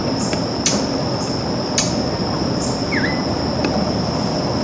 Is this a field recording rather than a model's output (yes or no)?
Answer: yes